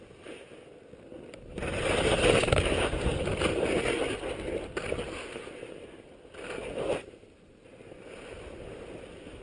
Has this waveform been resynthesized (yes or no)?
no